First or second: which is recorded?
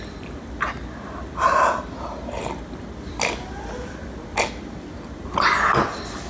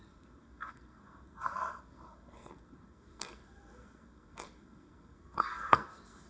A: first